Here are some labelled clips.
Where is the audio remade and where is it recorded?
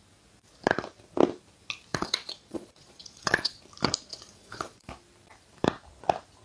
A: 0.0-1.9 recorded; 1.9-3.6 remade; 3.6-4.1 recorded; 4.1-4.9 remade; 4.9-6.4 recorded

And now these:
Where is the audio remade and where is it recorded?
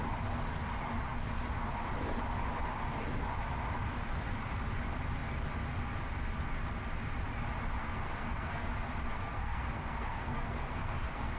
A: 0.0-7.8 recorded; 7.8-8.7 remade; 8.7-9.1 recorded; 9.1-11.4 remade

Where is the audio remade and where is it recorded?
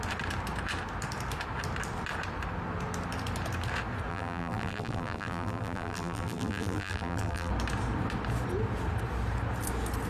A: 0.0-4.1 recorded; 4.1-7.5 remade; 7.5-10.1 recorded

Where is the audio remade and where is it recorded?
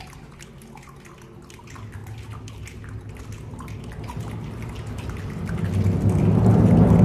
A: 0.0-7.0 recorded